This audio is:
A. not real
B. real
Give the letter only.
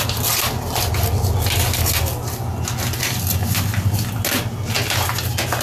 B